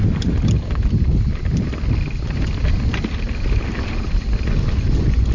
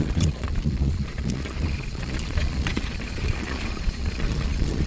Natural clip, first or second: first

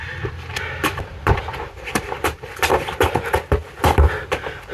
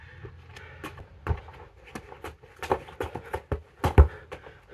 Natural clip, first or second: second